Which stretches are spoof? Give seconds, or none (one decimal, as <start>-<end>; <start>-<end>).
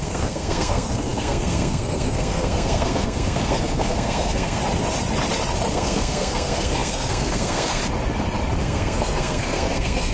0.0-4.6; 5.7-7.8; 8.6-10.1